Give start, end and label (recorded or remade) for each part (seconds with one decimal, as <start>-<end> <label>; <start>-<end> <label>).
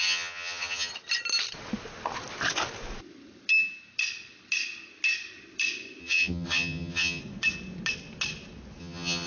0.0-0.9 remade; 0.9-6.0 recorded; 6.0-7.2 remade; 7.2-8.8 recorded; 8.8-9.3 remade